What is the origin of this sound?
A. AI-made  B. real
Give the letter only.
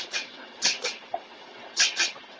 A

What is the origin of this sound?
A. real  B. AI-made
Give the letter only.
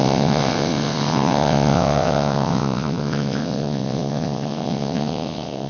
B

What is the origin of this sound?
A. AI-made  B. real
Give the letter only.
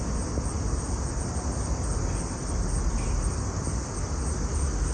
B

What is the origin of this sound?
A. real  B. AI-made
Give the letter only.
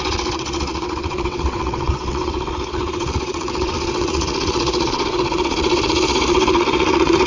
B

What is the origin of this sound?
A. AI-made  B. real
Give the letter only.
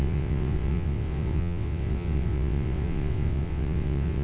A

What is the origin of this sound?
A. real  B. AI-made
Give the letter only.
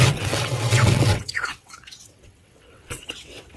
B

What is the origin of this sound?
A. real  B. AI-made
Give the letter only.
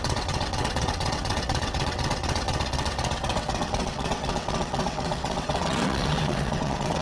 B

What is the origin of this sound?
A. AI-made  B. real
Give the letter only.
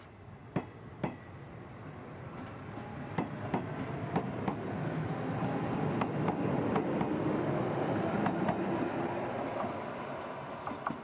B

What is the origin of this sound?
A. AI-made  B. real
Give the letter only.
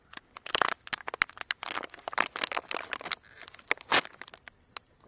B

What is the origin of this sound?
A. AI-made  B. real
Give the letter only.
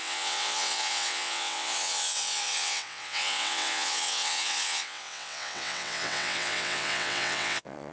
A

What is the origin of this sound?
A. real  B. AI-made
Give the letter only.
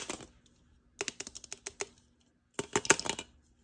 A